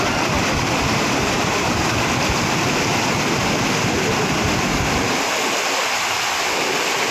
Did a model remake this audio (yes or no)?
no